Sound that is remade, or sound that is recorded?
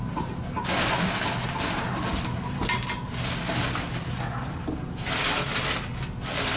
recorded